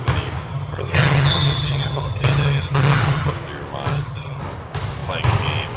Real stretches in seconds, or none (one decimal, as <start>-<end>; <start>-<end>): 0.0-0.5; 3.3-3.9; 4.4-5.8